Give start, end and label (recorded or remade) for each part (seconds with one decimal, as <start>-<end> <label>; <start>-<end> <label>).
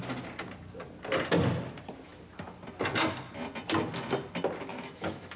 0.0-4.7 recorded; 4.7-5.4 remade